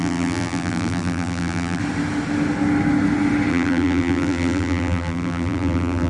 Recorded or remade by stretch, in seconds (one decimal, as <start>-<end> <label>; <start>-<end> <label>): 0.0-1.8 remade; 1.8-3.5 recorded; 3.5-6.1 remade